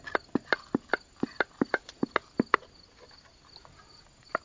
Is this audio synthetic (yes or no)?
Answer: no